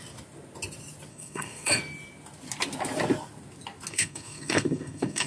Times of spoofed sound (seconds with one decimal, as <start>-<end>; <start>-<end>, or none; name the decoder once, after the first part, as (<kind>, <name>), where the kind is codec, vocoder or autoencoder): 1.1-1.8 (codec, SNAC); 3.9-5.3